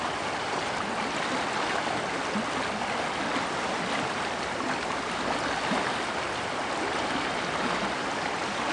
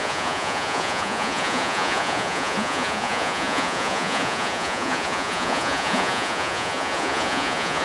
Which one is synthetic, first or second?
second